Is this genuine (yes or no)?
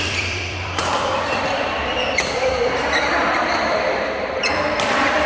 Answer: no